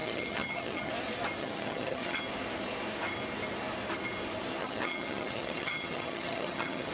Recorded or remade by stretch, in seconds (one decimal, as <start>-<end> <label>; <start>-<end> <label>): 0.0-0.9 remade; 0.9-1.4 recorded; 1.4-2.2 remade; 2.2-4.6 recorded; 4.6-6.9 remade

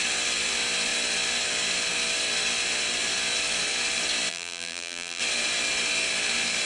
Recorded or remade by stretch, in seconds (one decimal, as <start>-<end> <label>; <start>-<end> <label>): 0.0-4.3 recorded; 4.3-5.2 remade; 5.2-6.7 recorded

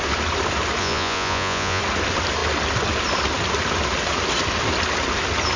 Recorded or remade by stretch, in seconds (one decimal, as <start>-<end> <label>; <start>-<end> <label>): 0.0-0.8 recorded; 0.8-1.8 remade; 1.8-5.6 recorded

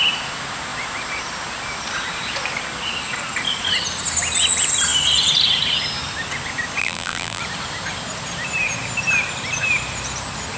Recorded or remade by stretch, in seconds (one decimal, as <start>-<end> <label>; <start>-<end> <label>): 0.0-6.8 recorded; 6.8-7.4 remade; 7.4-10.6 recorded